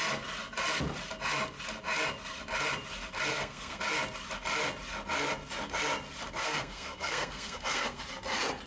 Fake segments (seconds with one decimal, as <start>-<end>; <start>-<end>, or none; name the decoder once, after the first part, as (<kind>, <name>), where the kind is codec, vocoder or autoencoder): 3.3-3.8 (codec, SNAC); 6.4-8.0